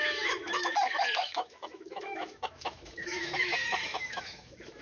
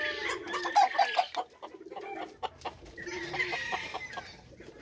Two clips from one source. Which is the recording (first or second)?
second